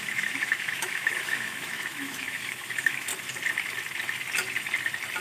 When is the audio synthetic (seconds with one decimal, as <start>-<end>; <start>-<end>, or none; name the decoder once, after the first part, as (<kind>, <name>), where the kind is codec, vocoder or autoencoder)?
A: 0.0-3.1 (autoencoder, DAC-VAE)